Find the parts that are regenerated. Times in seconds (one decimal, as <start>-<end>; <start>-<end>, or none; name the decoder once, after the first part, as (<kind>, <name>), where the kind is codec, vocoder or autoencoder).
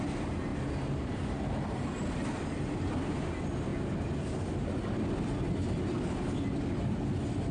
none